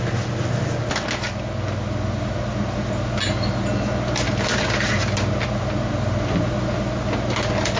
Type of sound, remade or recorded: recorded